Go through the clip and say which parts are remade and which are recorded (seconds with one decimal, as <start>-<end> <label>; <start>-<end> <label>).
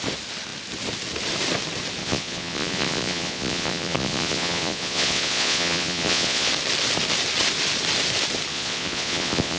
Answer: 0.0-2.0 recorded; 2.0-6.5 remade; 6.5-8.5 recorded; 8.5-9.6 remade